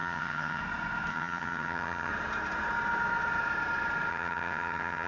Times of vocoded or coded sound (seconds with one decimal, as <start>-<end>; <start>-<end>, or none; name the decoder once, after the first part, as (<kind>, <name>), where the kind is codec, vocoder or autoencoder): 0.0-0.6 (vocoder, HiFi-GAN); 1.1-2.1; 4.1-5.1